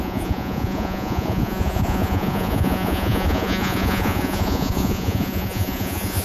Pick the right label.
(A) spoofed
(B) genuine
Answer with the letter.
A